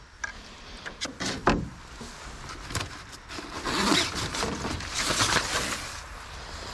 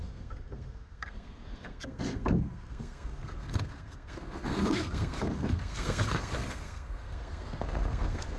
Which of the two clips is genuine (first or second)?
first